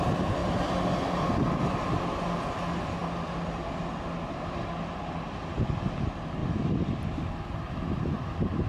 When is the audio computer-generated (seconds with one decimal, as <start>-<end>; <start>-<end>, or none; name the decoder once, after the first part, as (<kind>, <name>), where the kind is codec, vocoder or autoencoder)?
none